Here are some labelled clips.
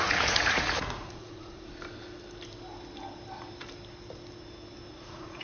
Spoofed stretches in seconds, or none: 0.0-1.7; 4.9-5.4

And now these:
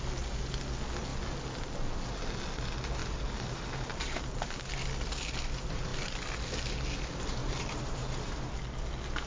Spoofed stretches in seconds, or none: 3.0-4.5; 7.4-8.3

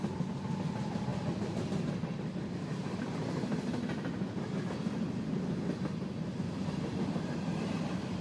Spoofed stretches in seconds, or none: 1.1-5.4; 6.9-8.2

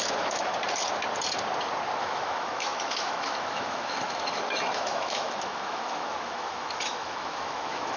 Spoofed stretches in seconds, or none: 0.0-0.5; 2.0-8.0

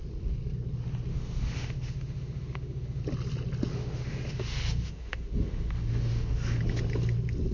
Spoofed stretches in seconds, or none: 1.1-3.0; 3.7-6.6

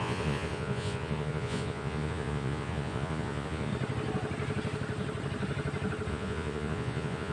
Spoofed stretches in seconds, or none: 0.0-3.7; 6.1-7.3

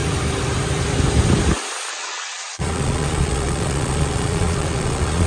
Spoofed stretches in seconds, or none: 1.9-5.3

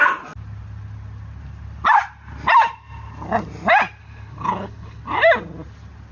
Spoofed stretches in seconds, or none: 4.0-5.0